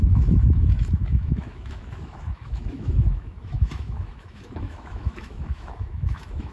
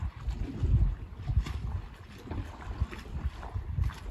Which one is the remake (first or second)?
first